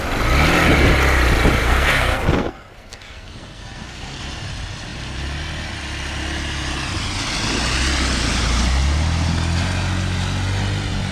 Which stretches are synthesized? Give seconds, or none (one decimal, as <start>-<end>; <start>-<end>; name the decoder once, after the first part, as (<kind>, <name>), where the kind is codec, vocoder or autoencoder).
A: 1.6-4.2 (codec, SNAC)